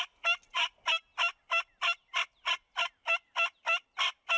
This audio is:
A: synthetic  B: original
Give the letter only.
B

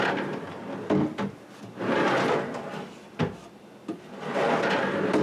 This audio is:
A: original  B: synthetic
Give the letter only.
A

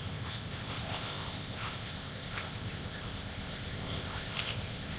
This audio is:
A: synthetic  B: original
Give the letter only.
A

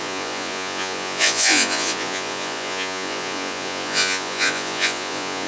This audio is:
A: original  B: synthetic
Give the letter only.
B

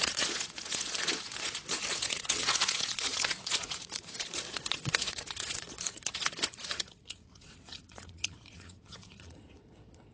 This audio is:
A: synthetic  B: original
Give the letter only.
A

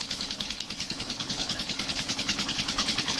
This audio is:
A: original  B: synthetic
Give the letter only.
B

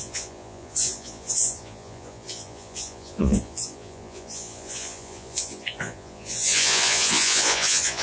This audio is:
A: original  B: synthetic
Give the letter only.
B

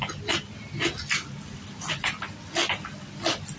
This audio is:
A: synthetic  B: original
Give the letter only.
B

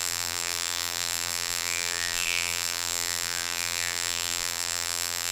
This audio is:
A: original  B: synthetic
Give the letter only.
B